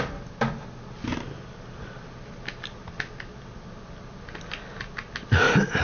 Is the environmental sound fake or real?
real